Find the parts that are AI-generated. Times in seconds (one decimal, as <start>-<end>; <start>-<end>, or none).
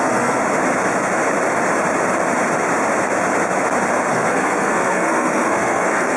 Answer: 0.0-0.4; 4.1-6.2